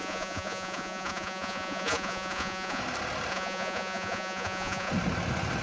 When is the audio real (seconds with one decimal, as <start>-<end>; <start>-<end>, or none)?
2.8-3.3; 4.9-5.6